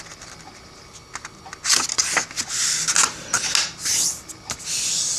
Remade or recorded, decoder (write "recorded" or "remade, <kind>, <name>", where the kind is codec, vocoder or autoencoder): recorded